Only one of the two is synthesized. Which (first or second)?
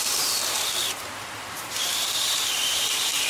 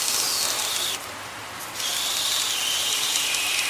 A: first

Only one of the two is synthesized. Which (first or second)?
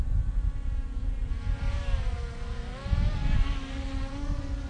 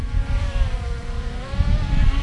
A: second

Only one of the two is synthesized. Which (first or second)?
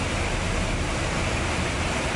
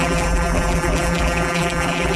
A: second